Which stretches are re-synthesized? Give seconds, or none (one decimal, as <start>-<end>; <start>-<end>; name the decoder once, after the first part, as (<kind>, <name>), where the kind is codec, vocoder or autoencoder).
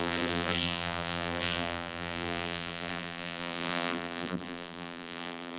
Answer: 0.0-5.6 (vocoder, BigVGAN v2)